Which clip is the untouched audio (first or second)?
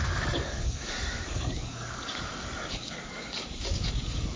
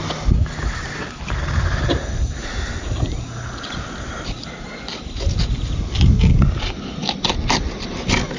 second